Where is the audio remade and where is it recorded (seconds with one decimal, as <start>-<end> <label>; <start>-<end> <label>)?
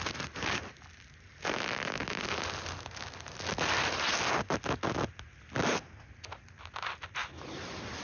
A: 0.0-8.0 recorded